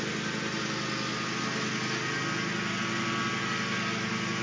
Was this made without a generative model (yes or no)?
yes